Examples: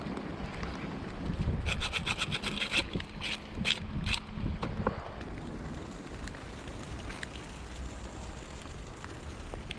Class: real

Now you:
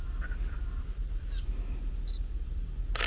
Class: fake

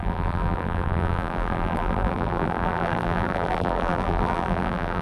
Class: fake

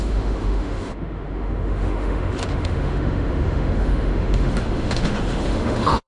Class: fake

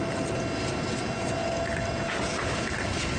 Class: real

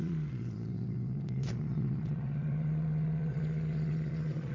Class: fake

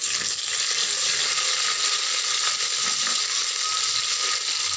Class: real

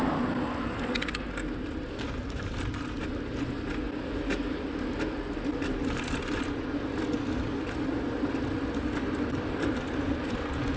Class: real